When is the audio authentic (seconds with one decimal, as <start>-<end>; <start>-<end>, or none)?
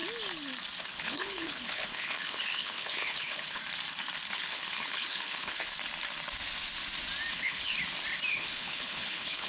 0.0-0.8; 3.6-4.3; 5.7-7.3; 7.7-8.3